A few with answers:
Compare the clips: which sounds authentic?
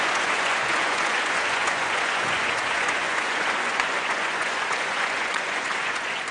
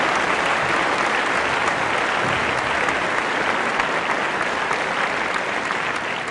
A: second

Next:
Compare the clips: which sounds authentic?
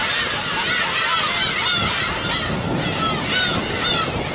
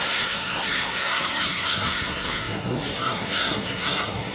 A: first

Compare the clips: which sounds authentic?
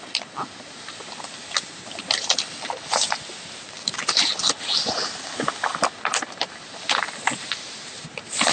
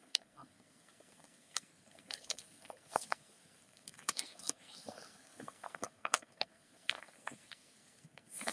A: first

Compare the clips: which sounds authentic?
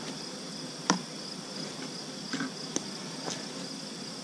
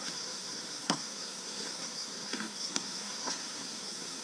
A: first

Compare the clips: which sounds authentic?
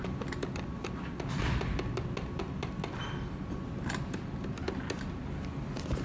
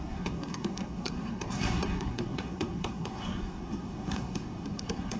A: first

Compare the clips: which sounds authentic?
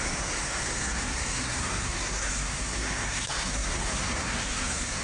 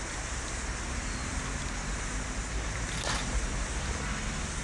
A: second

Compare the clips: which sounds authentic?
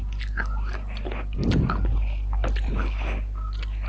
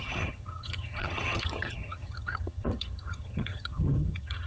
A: first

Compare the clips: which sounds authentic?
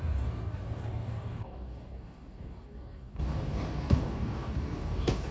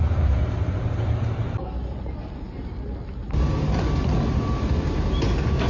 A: second